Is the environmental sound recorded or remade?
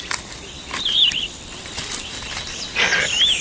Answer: recorded